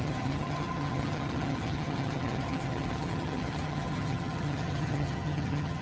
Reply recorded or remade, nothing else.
remade